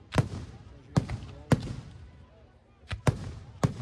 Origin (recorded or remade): recorded